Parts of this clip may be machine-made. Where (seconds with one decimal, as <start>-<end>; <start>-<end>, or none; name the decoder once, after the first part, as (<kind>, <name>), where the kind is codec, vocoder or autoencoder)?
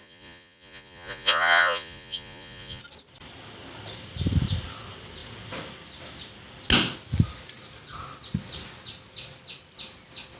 0.0-2.8 (vocoder, Vocos)